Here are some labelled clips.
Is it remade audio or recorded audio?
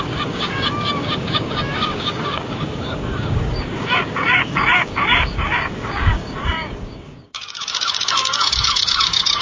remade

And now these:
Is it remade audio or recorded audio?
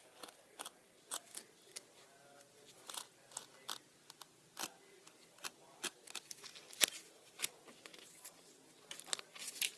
recorded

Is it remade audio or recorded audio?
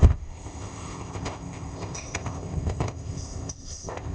remade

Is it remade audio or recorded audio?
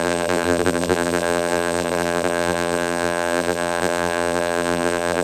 remade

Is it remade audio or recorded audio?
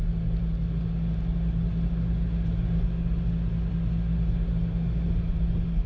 recorded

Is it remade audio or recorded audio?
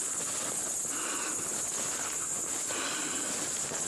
recorded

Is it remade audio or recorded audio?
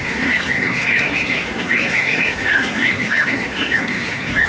remade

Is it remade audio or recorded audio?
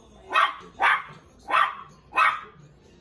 recorded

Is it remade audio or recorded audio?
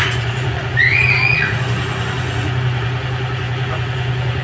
remade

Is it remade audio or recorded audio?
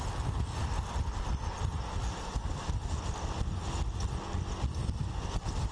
recorded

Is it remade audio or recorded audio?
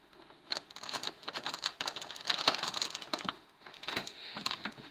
remade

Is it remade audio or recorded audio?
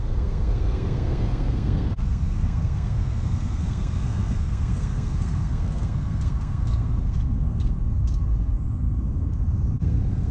remade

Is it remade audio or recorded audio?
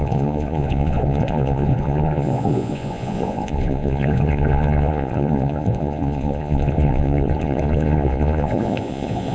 remade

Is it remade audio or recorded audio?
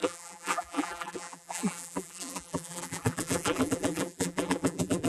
remade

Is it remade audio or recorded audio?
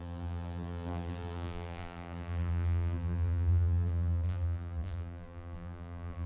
remade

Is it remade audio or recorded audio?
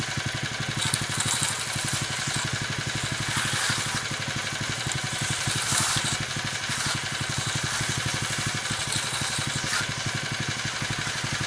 recorded